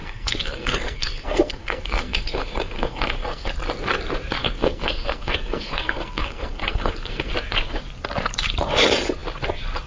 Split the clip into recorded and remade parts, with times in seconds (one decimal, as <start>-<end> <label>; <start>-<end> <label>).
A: 0.0-3.5 remade; 3.5-4.4 recorded; 4.4-7.3 remade; 7.3-9.9 recorded